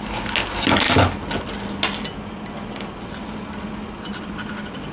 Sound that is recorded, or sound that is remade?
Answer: recorded